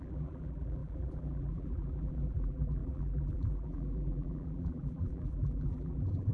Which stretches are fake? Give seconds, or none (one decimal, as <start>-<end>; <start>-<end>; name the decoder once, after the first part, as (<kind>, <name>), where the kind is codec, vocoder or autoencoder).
0.0-6.3 (vocoder, BigVGAN v2)